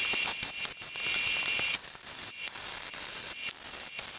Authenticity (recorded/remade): recorded